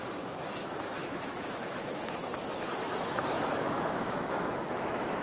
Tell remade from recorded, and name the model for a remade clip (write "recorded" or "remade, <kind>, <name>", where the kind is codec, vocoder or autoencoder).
remade, autoencoder, DAC-VAE